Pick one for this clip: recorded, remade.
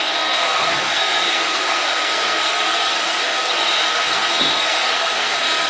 remade